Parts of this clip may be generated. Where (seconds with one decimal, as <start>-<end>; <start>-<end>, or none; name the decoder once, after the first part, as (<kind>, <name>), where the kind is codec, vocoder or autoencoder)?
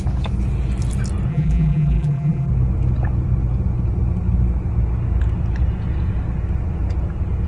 1.3-2.5 (vocoder, BigVGAN v2)